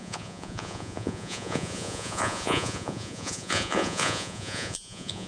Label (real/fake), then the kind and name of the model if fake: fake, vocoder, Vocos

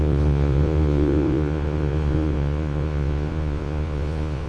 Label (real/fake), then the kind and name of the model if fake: fake, vocoder, Vocos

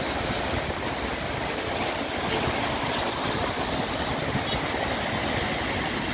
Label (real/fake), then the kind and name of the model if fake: real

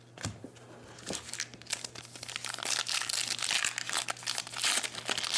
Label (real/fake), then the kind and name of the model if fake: real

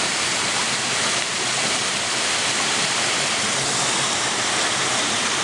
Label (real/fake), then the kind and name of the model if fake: real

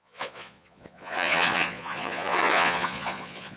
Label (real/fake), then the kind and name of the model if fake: fake, vocoder, Vocos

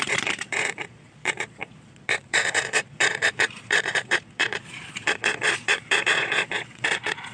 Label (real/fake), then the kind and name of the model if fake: fake, vocoder, Vocos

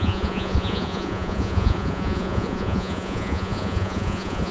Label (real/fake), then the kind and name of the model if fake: fake, vocoder, Vocos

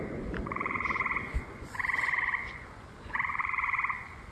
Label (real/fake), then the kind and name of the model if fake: fake, vocoder, Vocos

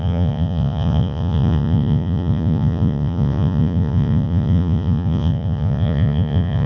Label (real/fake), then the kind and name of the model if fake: fake, vocoder, Vocos